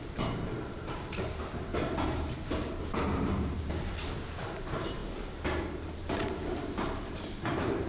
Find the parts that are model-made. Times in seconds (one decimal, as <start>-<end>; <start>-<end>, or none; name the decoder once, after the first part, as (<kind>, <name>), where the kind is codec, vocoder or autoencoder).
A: 0.0-1.7 (vocoder, BigVGAN v2); 2.3-5.0; 5.7-7.9